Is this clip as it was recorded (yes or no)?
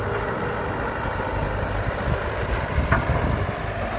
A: yes